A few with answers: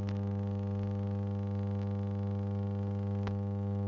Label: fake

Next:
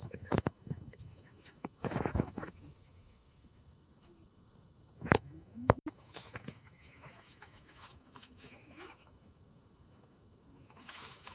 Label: fake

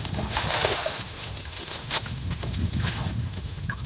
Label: fake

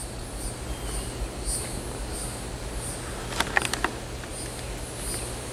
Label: real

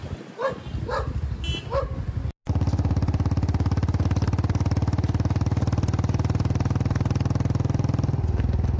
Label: real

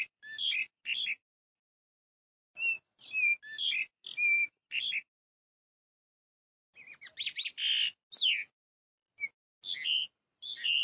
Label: real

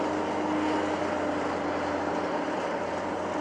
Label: real